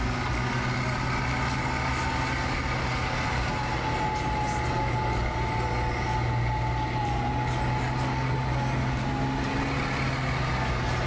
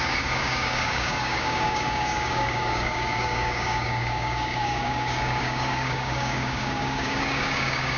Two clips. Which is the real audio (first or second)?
first